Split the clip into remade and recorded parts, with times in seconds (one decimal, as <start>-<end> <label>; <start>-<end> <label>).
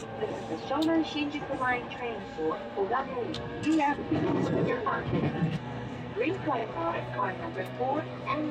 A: 0.0-2.2 recorded; 2.2-8.5 remade